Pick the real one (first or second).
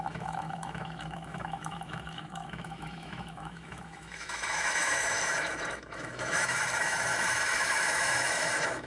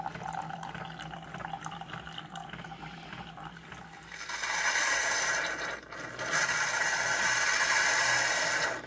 second